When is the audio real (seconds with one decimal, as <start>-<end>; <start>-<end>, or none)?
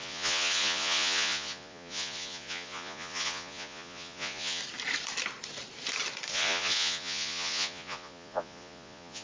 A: 4.6-6.3